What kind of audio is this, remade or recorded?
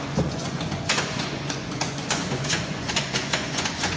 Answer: remade